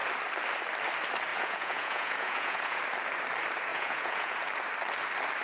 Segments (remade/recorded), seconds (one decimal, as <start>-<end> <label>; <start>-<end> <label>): 0.0-1.3 recorded; 1.3-2.8 remade; 2.8-3.7 recorded; 3.7-4.3 remade; 4.3-5.4 recorded